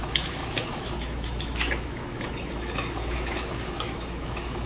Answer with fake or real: fake